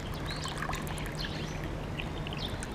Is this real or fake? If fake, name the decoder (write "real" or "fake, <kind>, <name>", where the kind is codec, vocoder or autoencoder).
real